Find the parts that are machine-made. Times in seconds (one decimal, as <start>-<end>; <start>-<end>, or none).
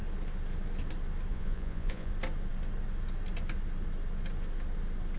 1.3-2.1